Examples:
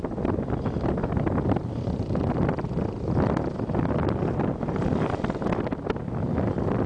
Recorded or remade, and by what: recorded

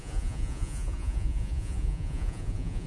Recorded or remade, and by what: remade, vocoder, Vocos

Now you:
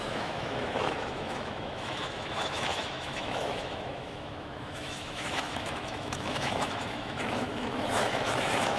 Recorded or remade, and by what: remade, autoencoder, DAC-VAE